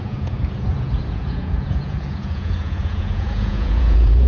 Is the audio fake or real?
fake